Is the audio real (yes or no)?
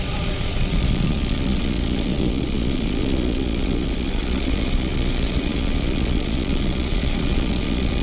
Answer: no